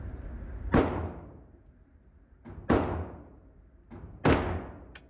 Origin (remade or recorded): recorded